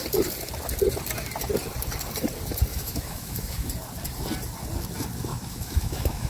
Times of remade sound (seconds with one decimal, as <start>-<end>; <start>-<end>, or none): 2.7-3.7; 5.3-6.3

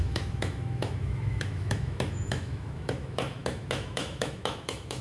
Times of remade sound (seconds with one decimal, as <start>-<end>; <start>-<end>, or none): 0.0-5.0

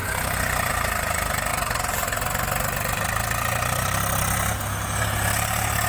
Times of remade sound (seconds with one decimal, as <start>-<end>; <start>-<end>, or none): none

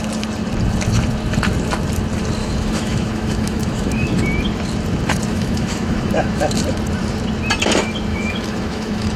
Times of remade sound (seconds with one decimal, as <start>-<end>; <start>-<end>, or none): 2.4-4.1; 5.3-6.6; 8.1-9.2

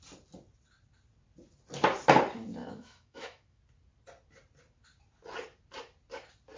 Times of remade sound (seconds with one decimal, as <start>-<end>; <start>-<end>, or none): 2.6-3.6

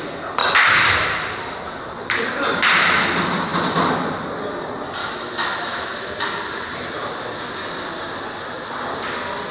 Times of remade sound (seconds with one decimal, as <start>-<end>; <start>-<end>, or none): 5.0-6.1